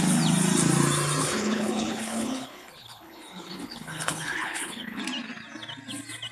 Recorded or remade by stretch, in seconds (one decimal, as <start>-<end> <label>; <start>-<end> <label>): 0.0-1.2 recorded; 1.2-5.0 remade; 5.0-6.3 recorded